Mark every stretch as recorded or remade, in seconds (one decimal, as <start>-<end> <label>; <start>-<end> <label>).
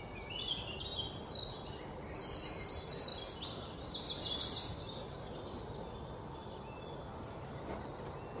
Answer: 0.0-8.4 recorded